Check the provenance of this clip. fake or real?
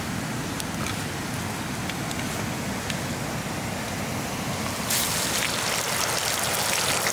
real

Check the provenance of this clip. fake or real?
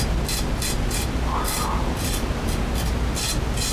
real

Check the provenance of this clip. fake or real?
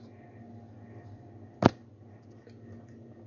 real